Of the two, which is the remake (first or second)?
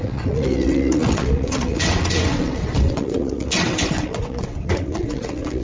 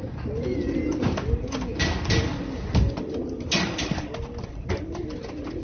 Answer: first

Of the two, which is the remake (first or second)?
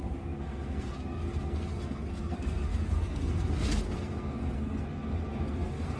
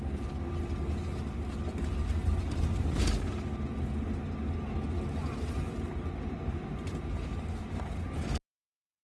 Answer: first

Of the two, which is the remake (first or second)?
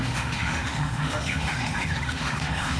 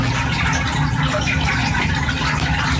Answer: first